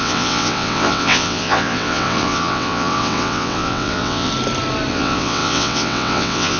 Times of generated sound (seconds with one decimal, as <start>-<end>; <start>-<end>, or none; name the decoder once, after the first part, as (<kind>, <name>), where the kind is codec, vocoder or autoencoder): 0.0-4.3 (vocoder, WaveNeXt); 4.9-6.6